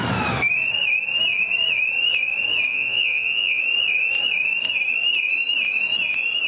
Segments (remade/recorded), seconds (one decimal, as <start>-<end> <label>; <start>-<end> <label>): 0.0-2.7 recorded; 2.7-3.6 remade; 3.6-6.5 recorded